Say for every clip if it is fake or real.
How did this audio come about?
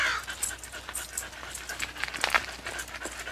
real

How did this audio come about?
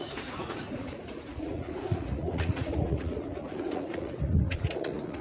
fake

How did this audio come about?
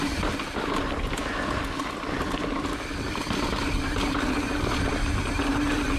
real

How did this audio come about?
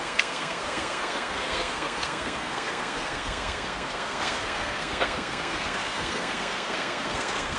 fake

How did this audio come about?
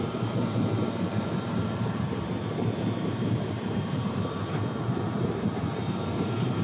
fake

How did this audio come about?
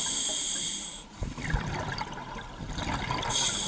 real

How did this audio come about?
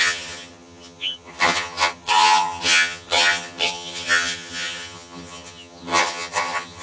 fake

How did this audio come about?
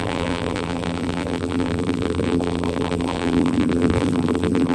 fake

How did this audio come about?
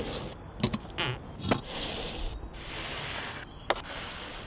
real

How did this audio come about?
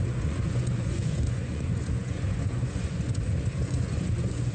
fake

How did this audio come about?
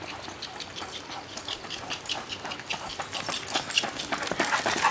real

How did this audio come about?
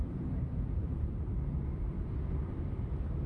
fake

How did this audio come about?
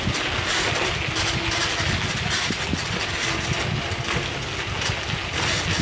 real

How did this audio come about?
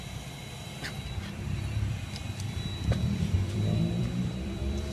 fake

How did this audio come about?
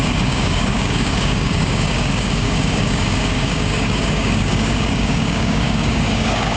fake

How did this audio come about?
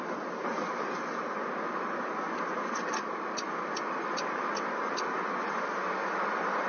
real